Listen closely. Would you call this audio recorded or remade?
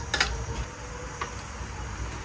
recorded